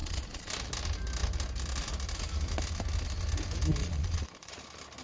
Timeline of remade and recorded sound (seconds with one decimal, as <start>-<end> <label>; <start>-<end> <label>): 0.0-0.5 remade; 0.5-3.8 recorded; 3.8-4.5 remade; 4.5-5.0 recorded